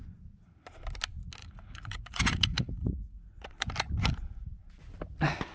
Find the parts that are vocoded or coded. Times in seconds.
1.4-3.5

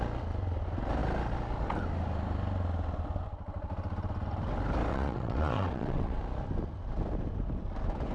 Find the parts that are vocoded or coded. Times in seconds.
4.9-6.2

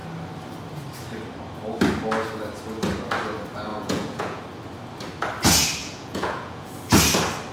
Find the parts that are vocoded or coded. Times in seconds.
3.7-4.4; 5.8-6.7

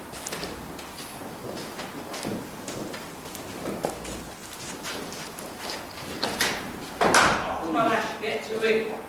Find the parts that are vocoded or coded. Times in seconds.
4.4-8.0

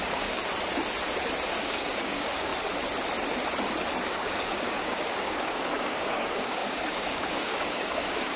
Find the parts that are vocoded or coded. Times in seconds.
0.0-0.4; 1.6-2.5; 4.1-8.4